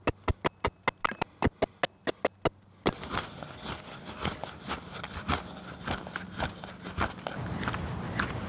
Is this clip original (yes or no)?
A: yes